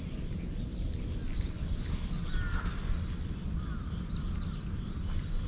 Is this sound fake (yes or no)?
no